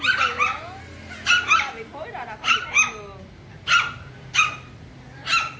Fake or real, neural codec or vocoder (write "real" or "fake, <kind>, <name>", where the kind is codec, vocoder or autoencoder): real